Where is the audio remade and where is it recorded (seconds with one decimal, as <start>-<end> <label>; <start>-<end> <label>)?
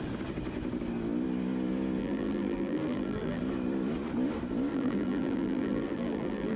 0.0-2.0 recorded; 2.0-3.4 remade; 3.4-4.7 recorded; 4.7-6.6 remade